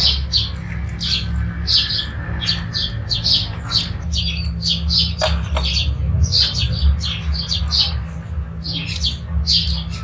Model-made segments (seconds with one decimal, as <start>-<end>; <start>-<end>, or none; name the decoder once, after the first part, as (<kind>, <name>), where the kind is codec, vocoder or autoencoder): none